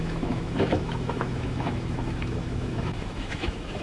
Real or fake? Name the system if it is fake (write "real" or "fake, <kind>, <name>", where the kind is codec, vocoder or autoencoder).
fake, autoencoder, DAC-VAE